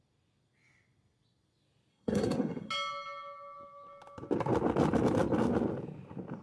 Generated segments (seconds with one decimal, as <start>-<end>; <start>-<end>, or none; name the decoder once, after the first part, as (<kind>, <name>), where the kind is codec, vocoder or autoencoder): 1.9-2.7 (codec, SNAC)